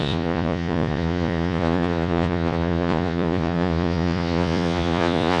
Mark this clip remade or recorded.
remade